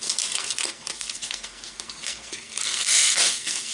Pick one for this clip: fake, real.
fake